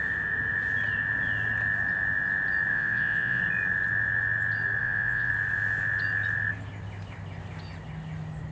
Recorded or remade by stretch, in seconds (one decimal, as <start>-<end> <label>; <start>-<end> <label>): 0.0-2.7 recorded; 2.7-3.4 remade; 3.4-4.8 recorded; 4.8-5.3 remade; 5.3-8.5 recorded